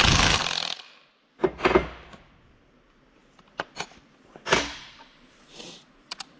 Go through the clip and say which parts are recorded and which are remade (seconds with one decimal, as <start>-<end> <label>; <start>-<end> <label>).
0.0-3.2 recorded; 3.2-3.8 remade; 3.8-6.4 recorded